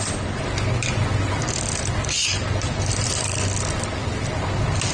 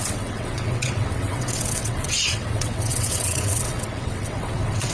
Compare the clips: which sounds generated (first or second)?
second